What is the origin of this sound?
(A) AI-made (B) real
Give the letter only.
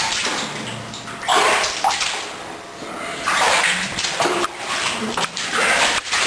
A